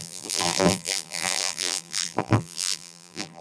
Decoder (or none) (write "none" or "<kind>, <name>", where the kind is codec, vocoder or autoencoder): vocoder, BigVGAN v2